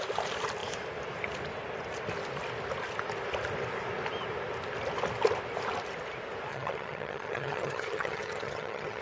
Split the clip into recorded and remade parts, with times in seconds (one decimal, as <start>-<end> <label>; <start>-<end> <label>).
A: 0.0-6.5 recorded; 6.5-9.0 remade

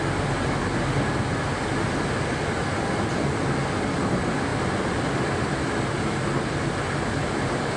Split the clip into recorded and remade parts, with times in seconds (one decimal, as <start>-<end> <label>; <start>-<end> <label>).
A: 0.0-4.5 recorded; 4.5-5.1 remade; 5.1-7.8 recorded

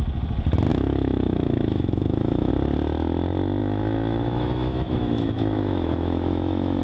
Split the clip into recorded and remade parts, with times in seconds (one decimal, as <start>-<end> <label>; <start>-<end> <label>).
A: 0.0-0.7 recorded; 0.7-2.5 remade; 2.5-3.6 recorded; 3.6-6.8 remade

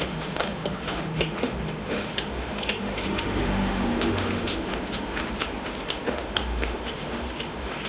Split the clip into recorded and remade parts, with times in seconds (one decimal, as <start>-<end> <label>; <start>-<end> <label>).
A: 0.0-7.9 remade

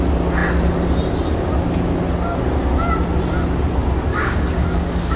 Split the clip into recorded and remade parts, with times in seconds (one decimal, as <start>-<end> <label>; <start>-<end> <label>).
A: 0.0-4.1 recorded; 4.1-5.2 remade

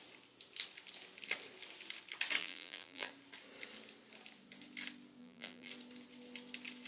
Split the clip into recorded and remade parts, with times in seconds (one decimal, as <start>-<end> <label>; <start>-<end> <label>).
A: 0.0-2.4 recorded; 2.4-3.1 remade; 3.1-5.2 recorded; 5.2-5.7 remade; 5.7-6.9 recorded

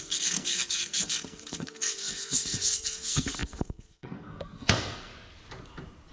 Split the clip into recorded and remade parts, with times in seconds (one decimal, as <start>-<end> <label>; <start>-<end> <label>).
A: 0.0-5.1 remade; 5.1-6.1 recorded

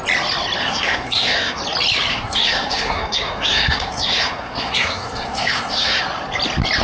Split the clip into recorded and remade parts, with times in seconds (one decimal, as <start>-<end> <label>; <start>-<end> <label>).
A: 0.0-0.6 recorded; 0.6-1.6 remade; 1.6-2.1 recorded; 2.1-6.0 remade; 6.0-6.8 recorded